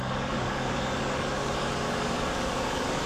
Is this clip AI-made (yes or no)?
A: yes